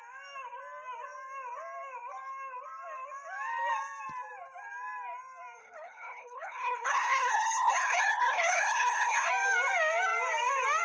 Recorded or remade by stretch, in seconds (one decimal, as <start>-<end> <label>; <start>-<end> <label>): 0.0-5.6 recorded; 5.6-9.3 remade; 9.3-10.8 recorded